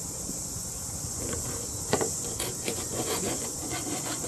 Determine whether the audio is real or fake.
fake